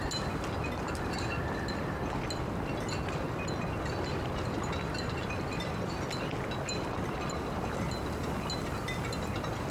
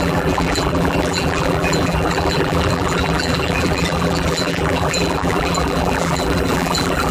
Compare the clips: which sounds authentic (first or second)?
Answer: first